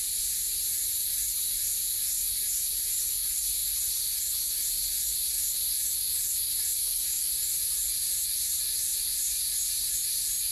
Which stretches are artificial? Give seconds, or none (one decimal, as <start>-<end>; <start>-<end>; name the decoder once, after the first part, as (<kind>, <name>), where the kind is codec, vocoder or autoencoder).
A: 6.8-7.3 (codec, SNAC)